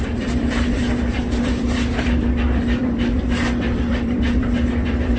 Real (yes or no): no